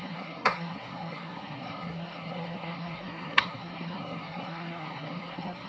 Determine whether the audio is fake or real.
fake